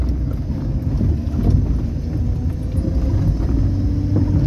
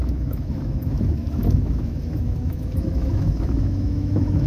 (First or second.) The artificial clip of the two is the second